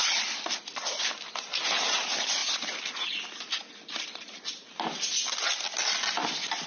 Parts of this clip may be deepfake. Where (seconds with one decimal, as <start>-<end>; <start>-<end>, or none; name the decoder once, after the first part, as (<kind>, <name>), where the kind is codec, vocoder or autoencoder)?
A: none